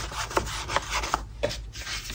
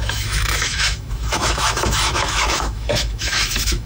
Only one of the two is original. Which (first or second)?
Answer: first